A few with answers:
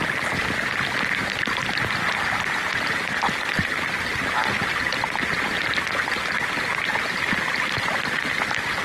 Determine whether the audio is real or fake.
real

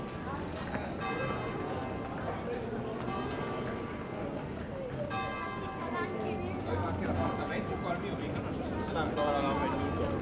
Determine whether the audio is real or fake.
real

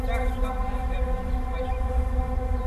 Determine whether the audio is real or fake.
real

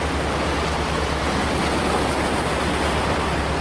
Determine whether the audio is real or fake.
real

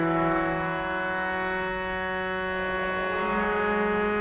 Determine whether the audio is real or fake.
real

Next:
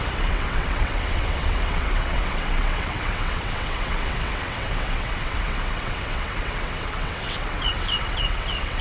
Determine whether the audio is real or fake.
fake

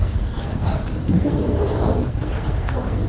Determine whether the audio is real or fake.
fake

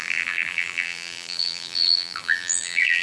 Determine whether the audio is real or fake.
fake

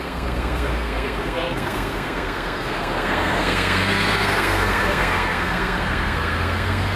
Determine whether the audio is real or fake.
fake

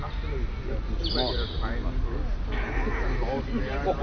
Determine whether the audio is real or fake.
real